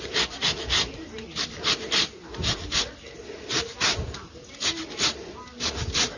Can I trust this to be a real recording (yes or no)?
yes